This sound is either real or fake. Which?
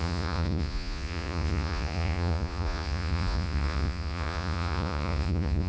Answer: fake